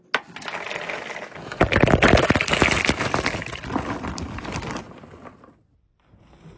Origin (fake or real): real